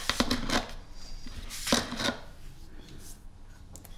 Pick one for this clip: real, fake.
real